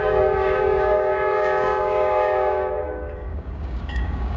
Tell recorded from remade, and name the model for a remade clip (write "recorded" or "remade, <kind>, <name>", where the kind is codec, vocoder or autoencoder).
remade, codec, DAC